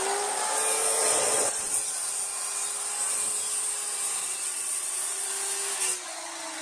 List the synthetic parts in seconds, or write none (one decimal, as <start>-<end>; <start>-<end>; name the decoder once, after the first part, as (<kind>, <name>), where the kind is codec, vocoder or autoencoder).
1.0-1.8 (vocoder, WaveNeXt); 4.2-5.3